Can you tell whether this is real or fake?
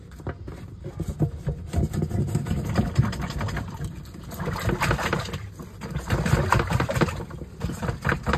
real